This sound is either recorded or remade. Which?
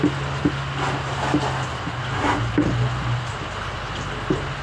recorded